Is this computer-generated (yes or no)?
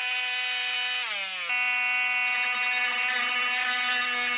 no